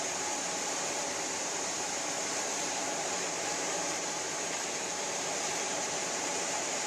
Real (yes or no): no